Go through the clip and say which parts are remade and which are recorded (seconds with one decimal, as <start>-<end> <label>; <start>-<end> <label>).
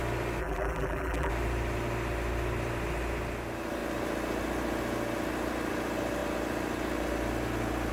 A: 0.0-0.4 recorded; 0.4-1.3 remade; 1.3-7.9 recorded